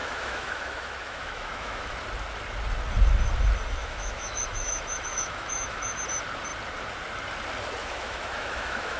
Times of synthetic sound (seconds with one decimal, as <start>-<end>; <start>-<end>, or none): 0.0-1.9; 3.8-6.0; 7.8-9.0